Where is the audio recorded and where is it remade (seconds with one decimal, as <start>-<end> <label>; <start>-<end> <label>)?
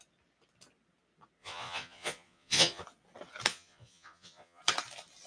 0.0-1.4 recorded; 1.4-2.8 remade; 2.8-3.5 recorded; 3.5-4.6 remade; 4.6-5.3 recorded